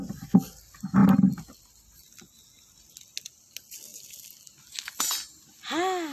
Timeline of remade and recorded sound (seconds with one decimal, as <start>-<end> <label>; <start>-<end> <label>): 0.0-6.1 recorded